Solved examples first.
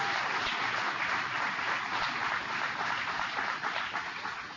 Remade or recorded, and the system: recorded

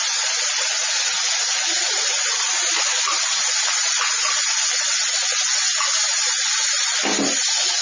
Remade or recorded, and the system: recorded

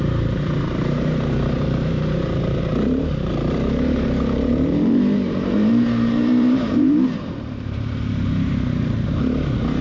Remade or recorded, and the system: remade, vocoder, BigVGAN v2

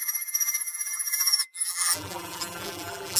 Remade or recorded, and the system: remade, vocoder, BigVGAN v2